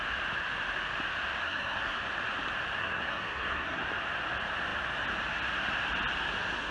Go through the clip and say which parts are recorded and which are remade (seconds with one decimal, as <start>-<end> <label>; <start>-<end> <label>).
0.0-1.4 recorded; 1.4-2.0 remade; 2.0-2.8 recorded; 2.8-3.8 remade; 3.8-6.7 recorded